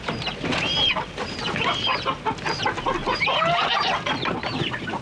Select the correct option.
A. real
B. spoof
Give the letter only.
A